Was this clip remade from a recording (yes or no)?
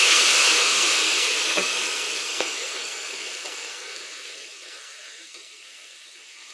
yes